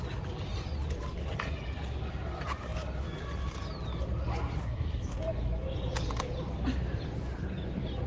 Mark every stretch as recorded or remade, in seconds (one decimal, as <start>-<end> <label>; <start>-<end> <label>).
0.0-4.6 recorded; 4.6-5.2 remade; 5.2-8.1 recorded